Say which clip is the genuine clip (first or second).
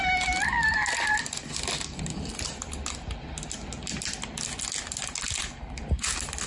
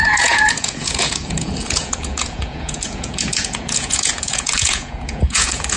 first